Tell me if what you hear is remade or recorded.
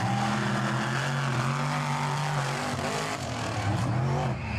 recorded